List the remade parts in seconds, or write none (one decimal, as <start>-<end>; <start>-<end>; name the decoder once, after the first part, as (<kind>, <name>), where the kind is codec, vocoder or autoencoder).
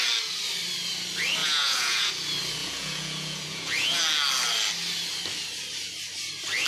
1.4-2.1 (vocoder, Vocos); 2.6-4.0